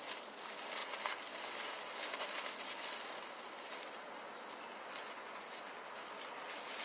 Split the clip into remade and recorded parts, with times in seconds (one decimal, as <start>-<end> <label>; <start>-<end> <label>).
0.0-5.0 recorded; 5.0-5.6 remade; 5.6-6.8 recorded